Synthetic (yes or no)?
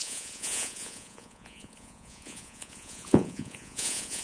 yes